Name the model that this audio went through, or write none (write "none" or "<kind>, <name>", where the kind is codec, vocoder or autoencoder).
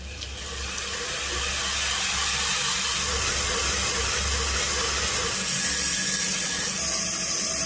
none